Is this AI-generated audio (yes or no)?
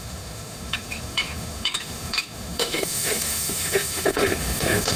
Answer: yes